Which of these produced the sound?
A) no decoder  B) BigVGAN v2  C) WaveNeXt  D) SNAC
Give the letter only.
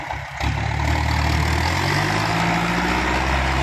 A